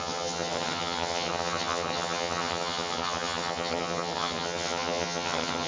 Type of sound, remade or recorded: remade